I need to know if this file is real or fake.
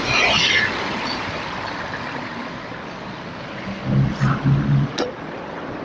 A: real